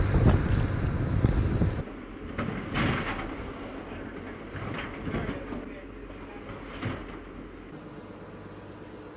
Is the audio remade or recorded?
recorded